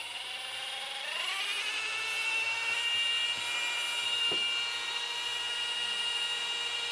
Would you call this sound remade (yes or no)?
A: no